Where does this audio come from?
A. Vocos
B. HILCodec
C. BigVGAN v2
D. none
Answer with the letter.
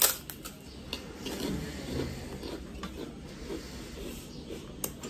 D